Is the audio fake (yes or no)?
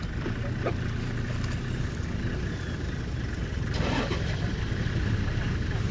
no